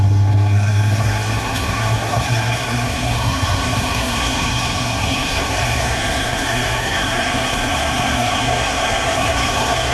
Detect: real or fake fake